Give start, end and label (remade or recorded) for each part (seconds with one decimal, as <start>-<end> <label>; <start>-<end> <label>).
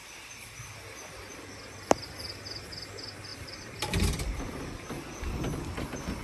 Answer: 0.0-0.5 remade; 0.5-3.3 recorded; 3.3-5.2 remade; 5.2-6.2 recorded